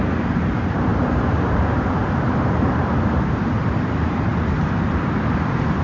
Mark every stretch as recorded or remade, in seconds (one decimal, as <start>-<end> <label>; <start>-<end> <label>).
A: 0.0-2.9 remade; 2.9-4.0 recorded; 4.0-5.8 remade